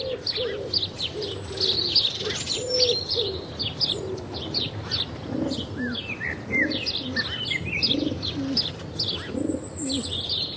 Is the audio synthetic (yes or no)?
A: no